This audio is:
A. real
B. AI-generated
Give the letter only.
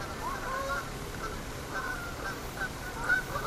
B